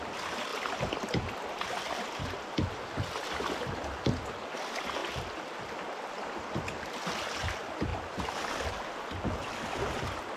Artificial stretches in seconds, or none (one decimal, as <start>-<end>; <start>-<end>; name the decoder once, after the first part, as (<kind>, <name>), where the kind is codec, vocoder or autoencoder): 5.0-6.1 (vocoder, BigVGAN v2); 7.9-8.5